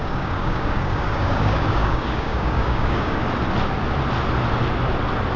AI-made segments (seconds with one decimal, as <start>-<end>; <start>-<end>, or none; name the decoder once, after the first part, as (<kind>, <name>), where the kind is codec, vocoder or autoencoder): 0.0-3.2 (codec, DAC)